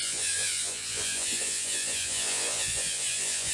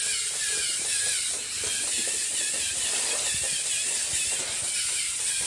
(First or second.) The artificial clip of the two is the first